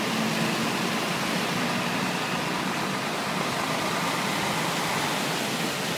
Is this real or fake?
real